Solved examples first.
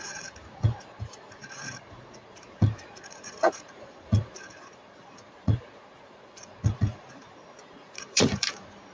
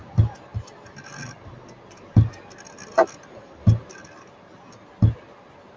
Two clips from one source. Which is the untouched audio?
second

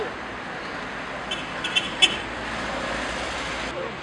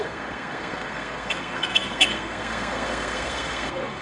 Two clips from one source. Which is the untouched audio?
first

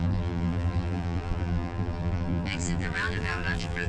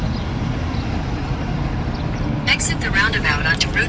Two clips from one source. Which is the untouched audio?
second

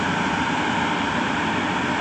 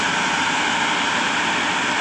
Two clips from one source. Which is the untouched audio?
second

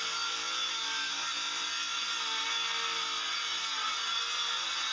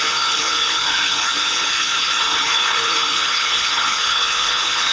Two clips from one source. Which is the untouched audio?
first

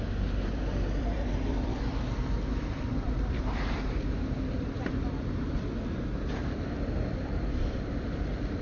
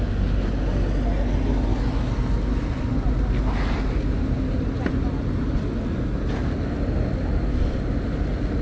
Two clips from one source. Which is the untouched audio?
second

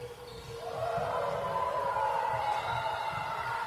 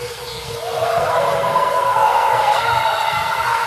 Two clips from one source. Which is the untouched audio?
first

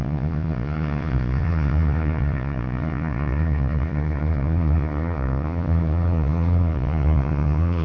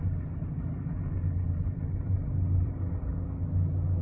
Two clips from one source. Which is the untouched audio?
second